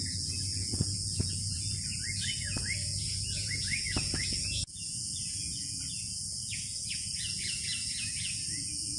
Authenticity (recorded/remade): remade